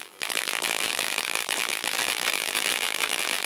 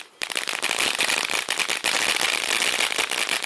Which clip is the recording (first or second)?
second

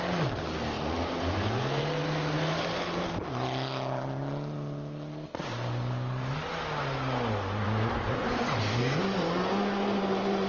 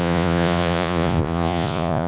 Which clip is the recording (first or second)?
first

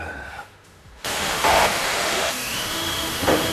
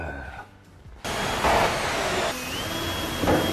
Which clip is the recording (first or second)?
second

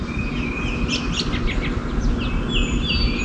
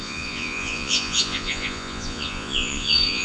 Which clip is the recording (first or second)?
first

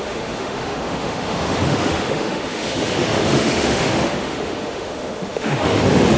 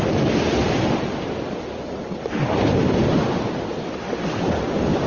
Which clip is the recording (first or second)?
second